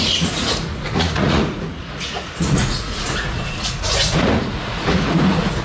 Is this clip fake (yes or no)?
yes